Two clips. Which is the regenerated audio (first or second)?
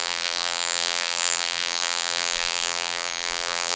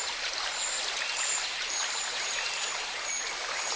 first